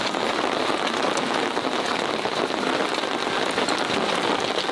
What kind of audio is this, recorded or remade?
recorded